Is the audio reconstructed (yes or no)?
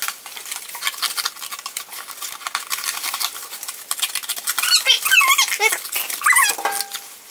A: no